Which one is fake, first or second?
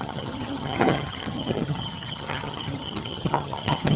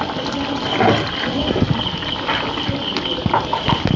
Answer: first